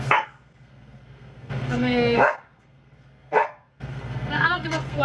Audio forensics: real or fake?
fake